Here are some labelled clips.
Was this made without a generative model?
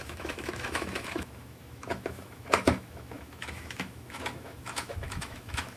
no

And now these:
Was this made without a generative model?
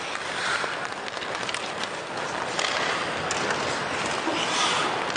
yes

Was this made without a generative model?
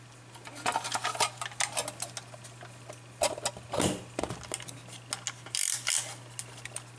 yes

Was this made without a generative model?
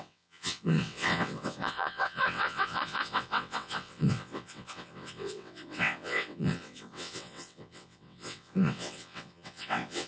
no